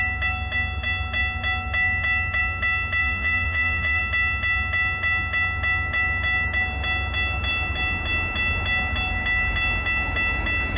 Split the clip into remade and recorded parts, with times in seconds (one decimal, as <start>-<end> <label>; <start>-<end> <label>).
0.0-3.0 recorded; 3.0-4.0 remade; 4.0-10.8 recorded